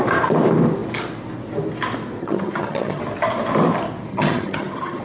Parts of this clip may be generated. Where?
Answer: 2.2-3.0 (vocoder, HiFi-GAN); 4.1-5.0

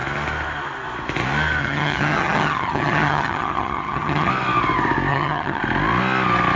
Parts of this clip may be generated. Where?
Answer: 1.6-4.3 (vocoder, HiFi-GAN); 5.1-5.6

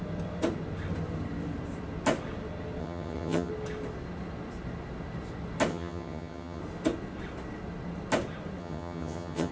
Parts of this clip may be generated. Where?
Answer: 2.8-3.5 (vocoder, HiFi-GAN); 5.7-6.6; 8.6-9.5

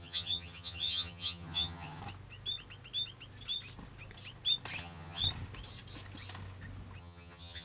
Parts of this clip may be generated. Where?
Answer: 0.0-2.0 (vocoder, HiFi-GAN); 4.8-5.2; 7.0-7.6